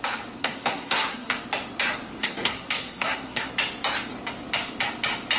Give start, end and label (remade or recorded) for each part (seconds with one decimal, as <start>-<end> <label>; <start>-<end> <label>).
0.0-0.4 recorded; 0.4-1.4 remade; 1.4-2.2 recorded; 2.2-3.5 remade; 3.5-5.4 recorded